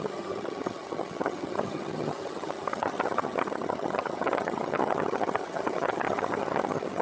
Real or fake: fake